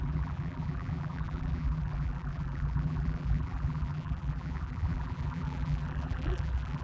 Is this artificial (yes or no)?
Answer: yes